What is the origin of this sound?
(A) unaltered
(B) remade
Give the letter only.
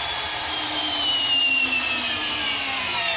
A